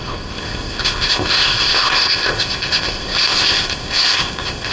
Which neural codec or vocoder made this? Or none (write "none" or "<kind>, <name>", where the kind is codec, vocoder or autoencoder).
codec, ZipCodec